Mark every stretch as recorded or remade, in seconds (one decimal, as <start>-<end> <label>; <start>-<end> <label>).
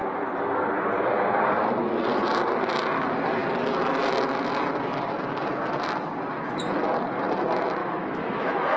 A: 0.0-7.8 recorded; 7.8-8.8 remade